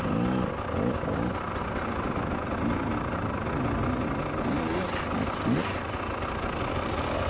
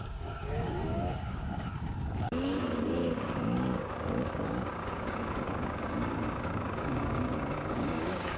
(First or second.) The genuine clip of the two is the first